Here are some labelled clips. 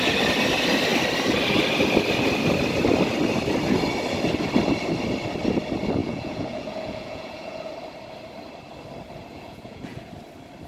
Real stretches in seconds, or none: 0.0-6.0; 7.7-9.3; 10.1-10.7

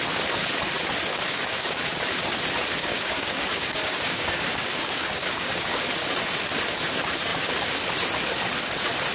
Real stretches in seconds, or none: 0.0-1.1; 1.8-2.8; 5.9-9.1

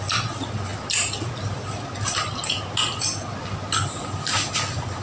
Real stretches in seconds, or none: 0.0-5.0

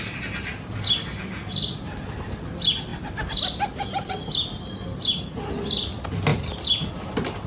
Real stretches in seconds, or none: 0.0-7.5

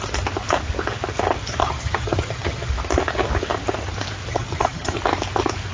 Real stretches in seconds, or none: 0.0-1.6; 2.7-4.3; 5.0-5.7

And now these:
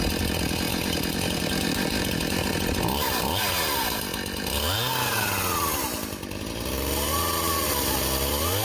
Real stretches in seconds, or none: 0.0-0.7; 2.5-8.6